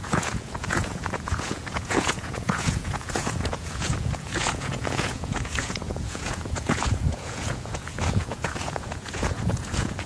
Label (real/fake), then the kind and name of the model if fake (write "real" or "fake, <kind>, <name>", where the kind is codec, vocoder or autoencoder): fake, vocoder, Vocos